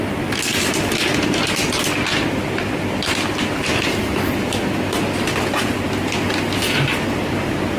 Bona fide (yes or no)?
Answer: yes